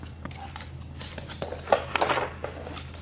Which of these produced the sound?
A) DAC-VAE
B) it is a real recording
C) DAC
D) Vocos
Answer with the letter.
B